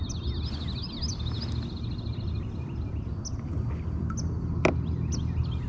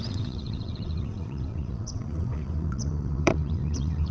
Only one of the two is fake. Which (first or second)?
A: second